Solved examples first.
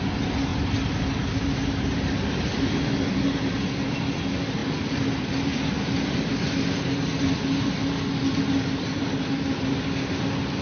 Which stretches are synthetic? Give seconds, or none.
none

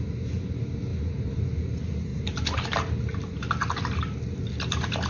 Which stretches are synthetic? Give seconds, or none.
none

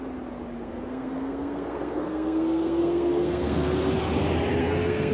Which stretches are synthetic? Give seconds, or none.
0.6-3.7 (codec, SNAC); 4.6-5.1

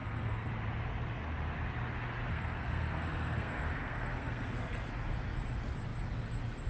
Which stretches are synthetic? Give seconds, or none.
0.0-0.5 (codec, SNAC); 2.3-5.1